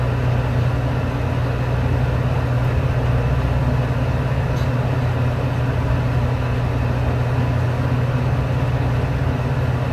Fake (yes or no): no